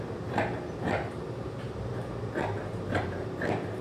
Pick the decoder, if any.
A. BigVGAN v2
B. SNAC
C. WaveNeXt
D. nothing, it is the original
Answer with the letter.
A